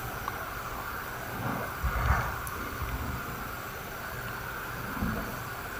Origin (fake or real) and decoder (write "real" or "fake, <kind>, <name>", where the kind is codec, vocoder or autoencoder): real